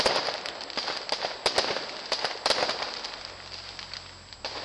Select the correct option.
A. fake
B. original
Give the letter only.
B